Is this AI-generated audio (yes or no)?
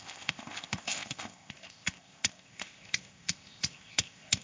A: yes